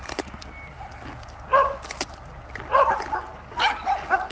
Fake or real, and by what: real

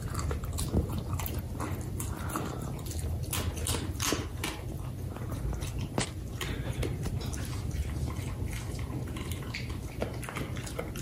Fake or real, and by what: real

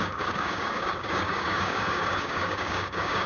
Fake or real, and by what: fake, codec, DAC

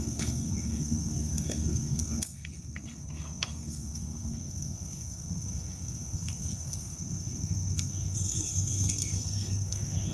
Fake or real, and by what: fake, codec, SNAC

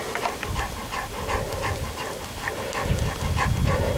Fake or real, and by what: real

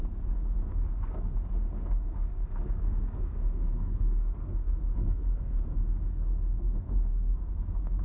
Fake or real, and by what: fake, codec, SNAC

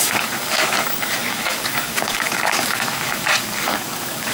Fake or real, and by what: fake, codec, DAC